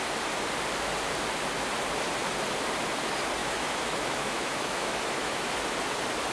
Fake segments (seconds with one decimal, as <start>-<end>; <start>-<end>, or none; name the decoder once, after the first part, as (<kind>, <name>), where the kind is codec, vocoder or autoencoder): 3.4-5.5 (autoencoder, DAC-VAE)